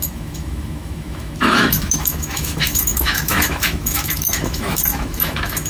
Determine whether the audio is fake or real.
fake